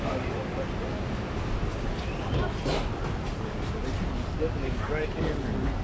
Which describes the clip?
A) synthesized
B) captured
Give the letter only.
B